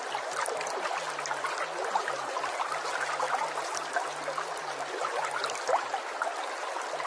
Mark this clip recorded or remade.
recorded